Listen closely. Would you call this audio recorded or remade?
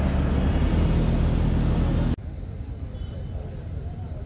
recorded